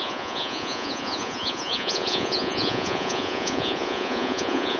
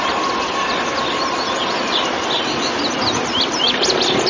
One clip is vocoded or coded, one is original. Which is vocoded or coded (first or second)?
first